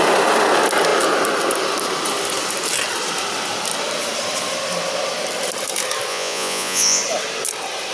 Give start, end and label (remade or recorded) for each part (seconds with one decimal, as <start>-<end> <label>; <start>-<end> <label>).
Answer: 0.0-6.1 recorded; 6.1-7.0 remade; 7.0-7.9 recorded